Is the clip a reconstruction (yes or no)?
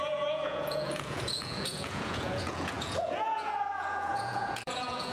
yes